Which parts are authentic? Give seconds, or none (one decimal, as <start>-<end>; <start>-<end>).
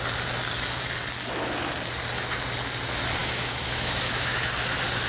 0.0-3.2; 4.5-5.1